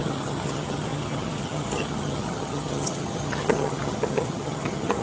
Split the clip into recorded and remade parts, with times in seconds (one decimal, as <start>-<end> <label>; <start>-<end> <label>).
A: 0.0-5.0 remade